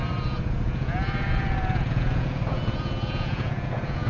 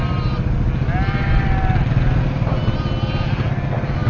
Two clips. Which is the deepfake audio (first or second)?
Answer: first